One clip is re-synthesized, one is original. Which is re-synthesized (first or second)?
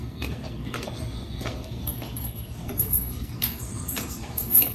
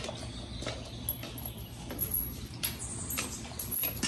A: first